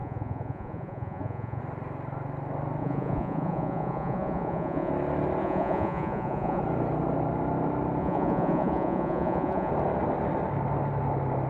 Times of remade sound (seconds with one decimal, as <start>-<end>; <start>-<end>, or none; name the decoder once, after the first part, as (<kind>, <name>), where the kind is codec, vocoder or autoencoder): 0.0-1.6 (vocoder, Vocos); 2.8-4.9; 5.4-6.6; 8.0-9.7